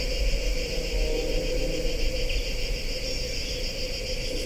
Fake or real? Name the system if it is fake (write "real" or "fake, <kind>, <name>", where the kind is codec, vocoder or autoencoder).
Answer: real